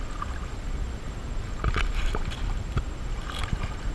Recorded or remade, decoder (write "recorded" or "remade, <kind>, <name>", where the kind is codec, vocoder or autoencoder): recorded